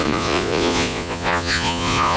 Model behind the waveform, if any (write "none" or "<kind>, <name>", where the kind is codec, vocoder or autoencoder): vocoder, Vocos